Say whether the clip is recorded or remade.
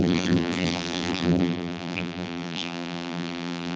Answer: remade